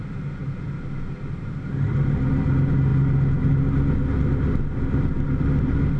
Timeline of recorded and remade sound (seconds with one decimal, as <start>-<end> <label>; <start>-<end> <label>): 0.0-6.0 recorded